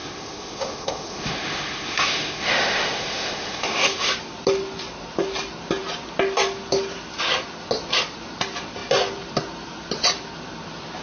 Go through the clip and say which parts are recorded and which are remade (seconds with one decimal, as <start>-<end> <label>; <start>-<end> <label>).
0.0-4.1 remade; 4.1-11.0 recorded